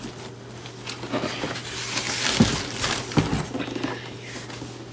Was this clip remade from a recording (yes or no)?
no